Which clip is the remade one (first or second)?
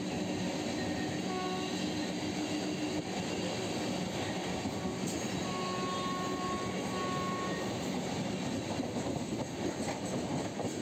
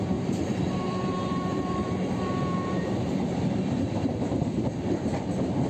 second